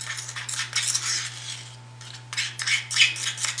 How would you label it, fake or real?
real